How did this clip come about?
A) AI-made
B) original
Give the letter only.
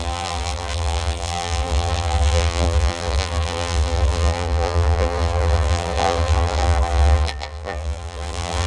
A